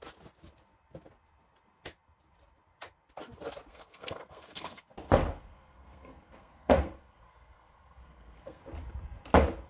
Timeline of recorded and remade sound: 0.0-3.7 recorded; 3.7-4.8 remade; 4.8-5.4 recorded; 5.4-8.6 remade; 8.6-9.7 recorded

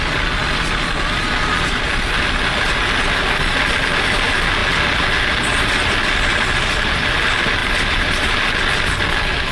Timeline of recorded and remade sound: 0.0-7.6 recorded; 7.6-8.4 remade; 8.4-9.5 recorded

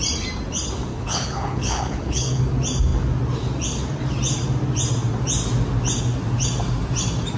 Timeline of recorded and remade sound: 0.0-0.9 recorded; 0.9-2.4 remade; 2.4-7.4 recorded

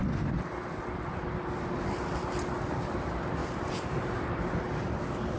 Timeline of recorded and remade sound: 0.0-3.4 recorded; 3.4-4.5 remade; 4.5-5.4 recorded